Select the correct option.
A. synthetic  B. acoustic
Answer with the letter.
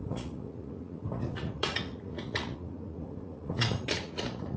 A